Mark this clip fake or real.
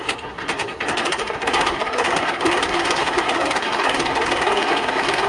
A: fake